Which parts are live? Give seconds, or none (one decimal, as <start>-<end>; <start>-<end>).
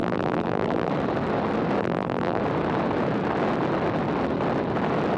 0.9-1.8; 2.4-5.2